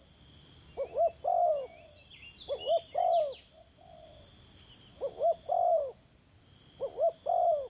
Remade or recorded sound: recorded